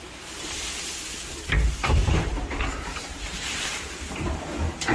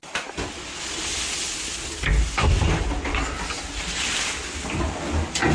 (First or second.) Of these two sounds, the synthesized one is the first